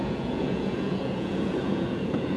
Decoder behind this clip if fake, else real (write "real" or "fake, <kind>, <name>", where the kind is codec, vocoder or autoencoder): fake, vocoder, Vocos